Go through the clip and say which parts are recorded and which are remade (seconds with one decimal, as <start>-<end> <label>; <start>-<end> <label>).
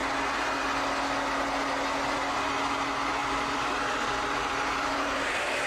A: 0.0-3.2 recorded; 3.2-5.7 remade